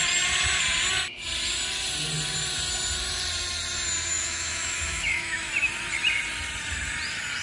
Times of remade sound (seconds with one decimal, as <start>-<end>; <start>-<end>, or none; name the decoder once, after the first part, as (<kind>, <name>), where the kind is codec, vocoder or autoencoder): 4.1-5.5 (autoencoder, DAC-VAE)